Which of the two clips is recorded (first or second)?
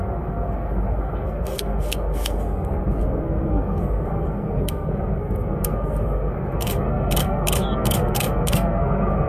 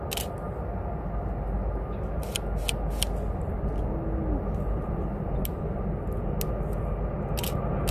second